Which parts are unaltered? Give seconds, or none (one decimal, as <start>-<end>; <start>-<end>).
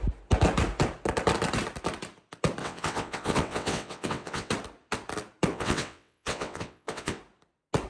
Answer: 0.0-2.6; 4.5-5.5; 7.2-7.9